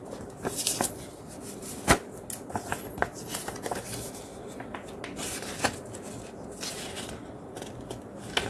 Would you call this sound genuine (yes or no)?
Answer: yes